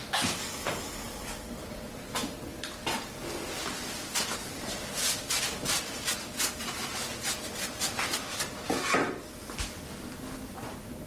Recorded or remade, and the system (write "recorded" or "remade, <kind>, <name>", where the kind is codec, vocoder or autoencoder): recorded